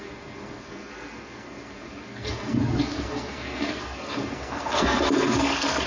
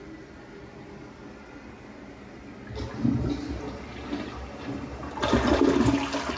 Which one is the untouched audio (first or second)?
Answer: second